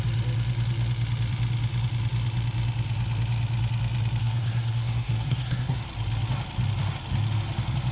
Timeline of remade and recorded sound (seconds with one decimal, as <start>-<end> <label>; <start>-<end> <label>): 0.0-4.2 recorded; 4.2-5.8 remade; 5.8-7.9 recorded